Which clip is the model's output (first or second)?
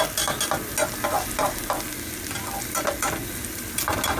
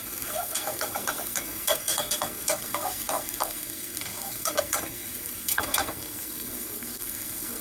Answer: second